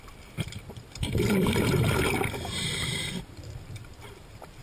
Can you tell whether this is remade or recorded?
remade